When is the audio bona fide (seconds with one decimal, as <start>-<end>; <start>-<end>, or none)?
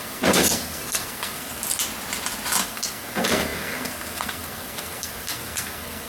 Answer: 1.6-2.6